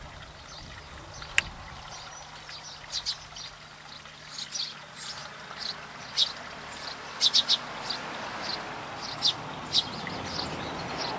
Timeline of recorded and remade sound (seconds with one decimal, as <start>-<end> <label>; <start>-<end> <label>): 0.0-11.2 recorded